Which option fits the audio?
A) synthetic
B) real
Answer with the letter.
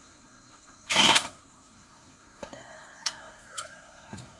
A